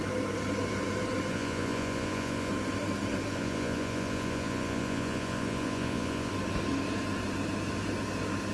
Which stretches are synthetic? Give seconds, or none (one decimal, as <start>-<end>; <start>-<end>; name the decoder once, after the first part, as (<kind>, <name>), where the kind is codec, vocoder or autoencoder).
1.3-2.5 (vocoder, Vocos); 3.3-6.3